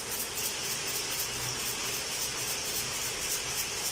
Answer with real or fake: real